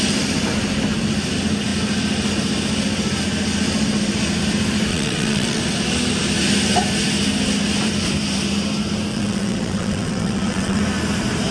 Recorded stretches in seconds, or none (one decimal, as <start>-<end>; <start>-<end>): 0.0-4.9; 5.6-9.1; 10.8-11.5